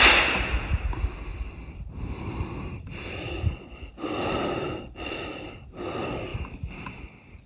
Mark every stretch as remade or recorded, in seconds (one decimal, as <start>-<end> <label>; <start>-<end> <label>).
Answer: 0.0-1.3 recorded; 1.3-5.5 remade; 5.5-7.5 recorded